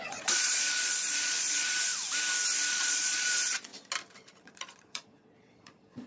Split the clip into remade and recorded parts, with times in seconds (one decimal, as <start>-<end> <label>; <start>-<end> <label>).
0.0-1.9 remade; 1.9-2.7 recorded; 2.7-3.7 remade; 3.7-4.4 recorded; 4.4-6.1 remade